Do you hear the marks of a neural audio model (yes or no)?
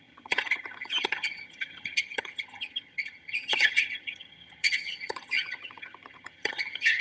yes